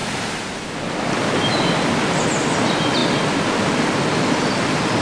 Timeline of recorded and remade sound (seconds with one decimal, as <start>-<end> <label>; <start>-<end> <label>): 0.0-5.0 recorded